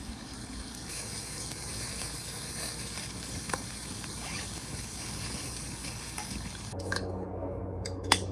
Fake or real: fake